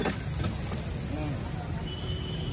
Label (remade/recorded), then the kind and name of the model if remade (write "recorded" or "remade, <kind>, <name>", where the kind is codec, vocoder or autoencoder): recorded